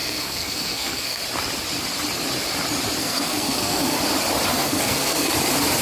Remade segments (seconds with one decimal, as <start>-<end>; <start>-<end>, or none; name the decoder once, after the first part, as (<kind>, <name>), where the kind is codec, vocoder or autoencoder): 0.0-1.2 (codec, SNAC); 3.0-4.0; 4.5-5.3